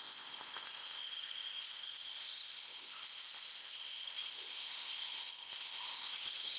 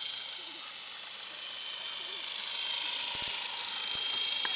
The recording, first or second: second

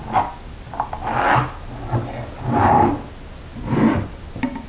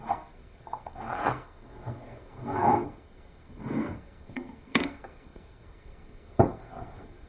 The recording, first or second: first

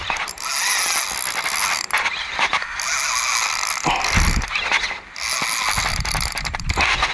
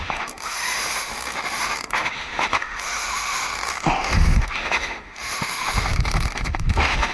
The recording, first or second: first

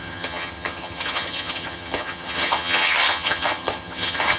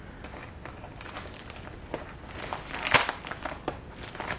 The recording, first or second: second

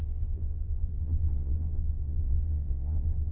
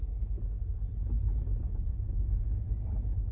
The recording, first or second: second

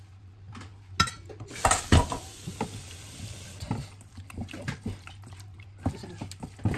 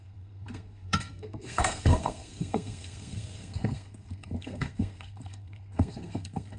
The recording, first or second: first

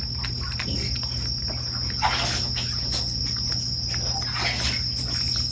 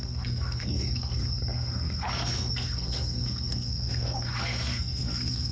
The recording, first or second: first